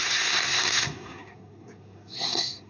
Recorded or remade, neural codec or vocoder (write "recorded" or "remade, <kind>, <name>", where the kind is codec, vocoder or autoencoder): remade, codec, SNAC